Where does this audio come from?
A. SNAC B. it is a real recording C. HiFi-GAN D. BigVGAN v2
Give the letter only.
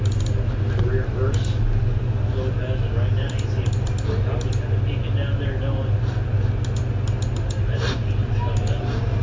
B